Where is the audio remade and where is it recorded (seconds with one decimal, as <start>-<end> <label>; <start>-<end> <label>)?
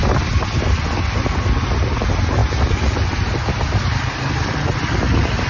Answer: 0.0-2.4 recorded; 2.4-4.8 remade; 4.8-5.5 recorded